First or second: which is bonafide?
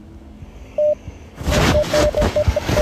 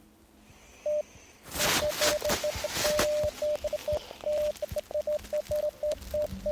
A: second